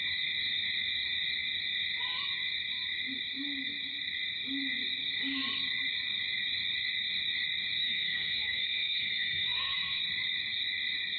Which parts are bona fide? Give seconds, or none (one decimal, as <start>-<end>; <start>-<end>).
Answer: 0.0-7.8; 10.0-11.2